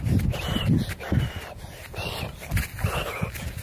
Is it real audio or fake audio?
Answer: real